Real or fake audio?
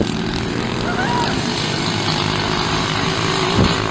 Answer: fake